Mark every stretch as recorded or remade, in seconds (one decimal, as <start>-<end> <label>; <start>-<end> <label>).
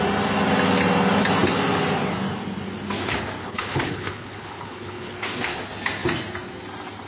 0.0-3.4 recorded; 3.4-5.6 remade; 5.6-7.1 recorded